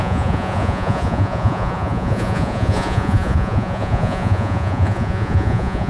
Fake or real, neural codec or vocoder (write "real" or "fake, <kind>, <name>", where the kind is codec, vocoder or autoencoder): fake, vocoder, Vocos